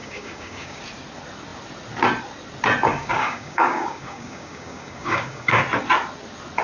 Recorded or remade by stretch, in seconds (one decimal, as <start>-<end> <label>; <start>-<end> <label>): 0.0-0.8 remade; 0.8-2.9 recorded; 2.9-5.6 remade; 5.6-6.6 recorded